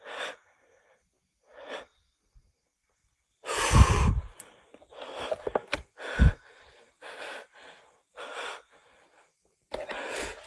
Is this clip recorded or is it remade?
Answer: recorded